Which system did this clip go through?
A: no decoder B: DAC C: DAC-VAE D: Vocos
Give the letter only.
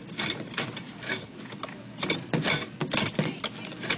A